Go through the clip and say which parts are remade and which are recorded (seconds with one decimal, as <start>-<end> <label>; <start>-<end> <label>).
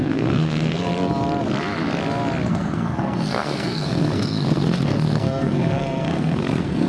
0.0-0.9 remade; 0.9-2.5 recorded; 2.5-6.9 remade